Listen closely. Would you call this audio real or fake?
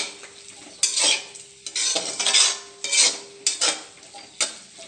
real